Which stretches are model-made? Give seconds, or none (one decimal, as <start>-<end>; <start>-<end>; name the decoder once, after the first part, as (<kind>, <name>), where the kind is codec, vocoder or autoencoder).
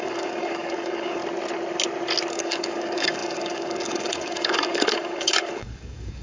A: 0.0-1.2 (codec, DAC); 2.3-6.2